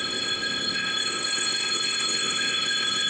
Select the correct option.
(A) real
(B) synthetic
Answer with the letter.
B